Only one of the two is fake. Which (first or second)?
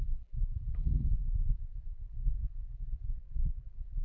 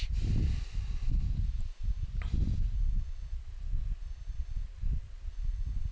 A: first